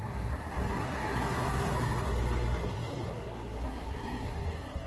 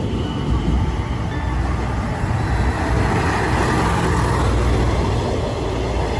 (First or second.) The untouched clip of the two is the second